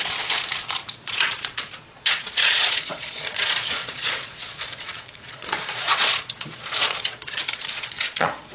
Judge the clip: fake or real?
fake